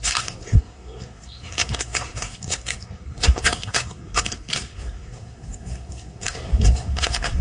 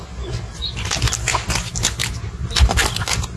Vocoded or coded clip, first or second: first